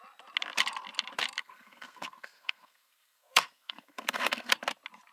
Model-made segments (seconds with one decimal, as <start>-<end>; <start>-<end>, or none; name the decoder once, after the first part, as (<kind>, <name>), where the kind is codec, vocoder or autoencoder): 1.4-4.5 (codec, SNAC)